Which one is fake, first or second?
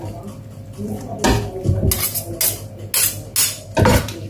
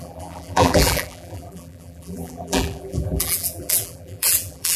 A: second